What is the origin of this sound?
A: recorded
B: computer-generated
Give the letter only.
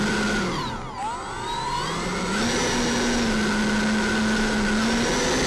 A